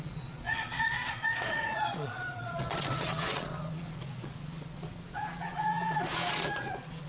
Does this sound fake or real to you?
fake